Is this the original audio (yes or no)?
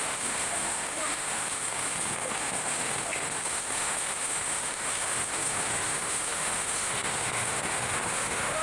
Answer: no